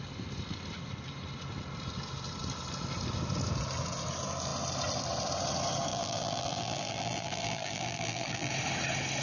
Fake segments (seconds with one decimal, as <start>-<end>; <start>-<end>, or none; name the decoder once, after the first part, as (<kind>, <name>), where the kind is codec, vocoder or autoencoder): 5.9-8.5 (vocoder, BigVGAN v2)